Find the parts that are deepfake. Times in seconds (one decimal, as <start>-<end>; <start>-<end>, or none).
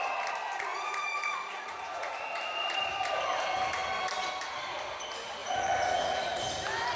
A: 0.7-2.1; 5.4-6.4